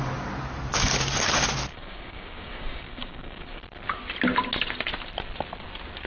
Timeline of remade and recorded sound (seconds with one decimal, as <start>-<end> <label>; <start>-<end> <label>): 0.0-1.7 recorded; 1.7-3.6 remade; 3.6-6.1 recorded